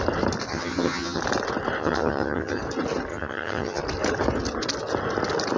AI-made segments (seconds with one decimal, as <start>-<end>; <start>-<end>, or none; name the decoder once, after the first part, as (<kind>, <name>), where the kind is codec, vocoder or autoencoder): 0.5-1.2 (vocoder, HiFi-GAN); 1.8-2.6; 3.1-3.8